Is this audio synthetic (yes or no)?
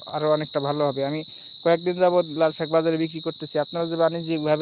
no